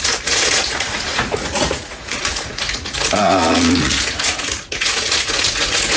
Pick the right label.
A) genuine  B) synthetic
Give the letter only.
B